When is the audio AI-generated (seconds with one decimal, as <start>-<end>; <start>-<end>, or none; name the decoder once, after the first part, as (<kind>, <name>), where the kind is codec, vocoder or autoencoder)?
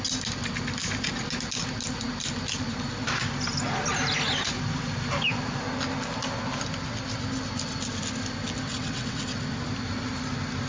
8.7-9.4 (vocoder, WaveNeXt)